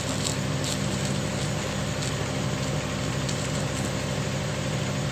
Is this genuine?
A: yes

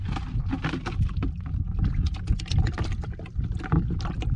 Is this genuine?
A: yes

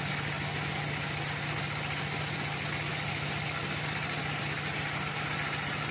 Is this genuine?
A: yes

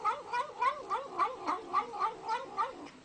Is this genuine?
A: no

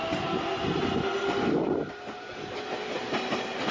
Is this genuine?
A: yes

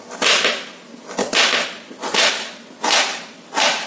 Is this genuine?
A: yes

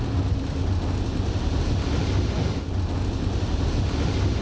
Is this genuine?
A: yes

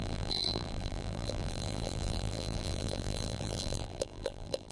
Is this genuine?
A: no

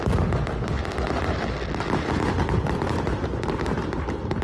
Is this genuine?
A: yes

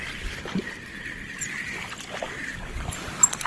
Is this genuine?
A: no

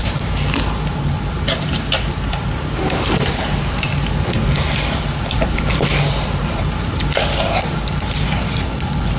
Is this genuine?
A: no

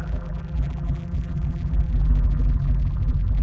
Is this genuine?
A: no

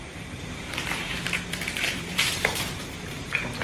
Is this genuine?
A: no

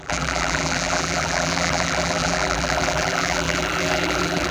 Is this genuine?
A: no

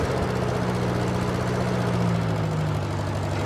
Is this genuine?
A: yes